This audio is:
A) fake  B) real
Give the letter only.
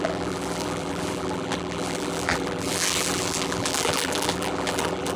A